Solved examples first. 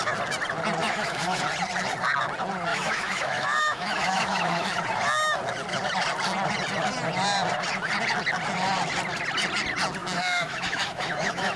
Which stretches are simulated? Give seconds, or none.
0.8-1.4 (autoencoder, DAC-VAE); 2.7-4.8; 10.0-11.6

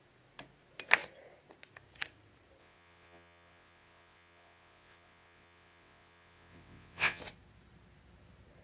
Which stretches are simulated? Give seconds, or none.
2.6-7.2 (vocoder, WaveNeXt)

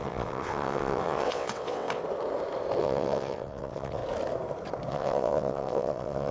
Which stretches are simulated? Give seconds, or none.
0.0-2.0 (vocoder, WaveNeXt); 2.8-4.0; 4.9-6.3

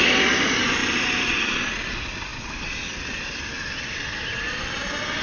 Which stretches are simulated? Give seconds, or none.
none